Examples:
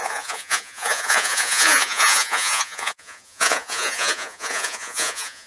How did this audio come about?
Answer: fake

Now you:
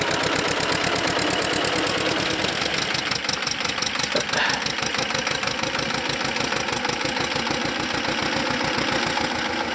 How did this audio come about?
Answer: real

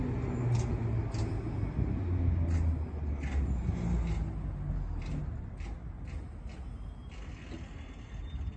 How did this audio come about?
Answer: real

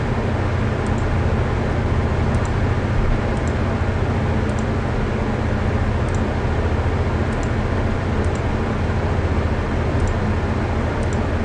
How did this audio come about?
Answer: real